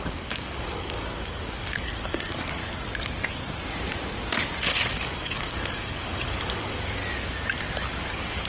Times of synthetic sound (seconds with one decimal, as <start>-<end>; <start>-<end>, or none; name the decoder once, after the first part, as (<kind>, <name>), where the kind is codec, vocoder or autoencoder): 0.0-2.6 (codec, DAC); 4.9-7.0; 8.1-8.5